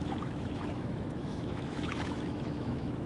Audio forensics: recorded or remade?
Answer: remade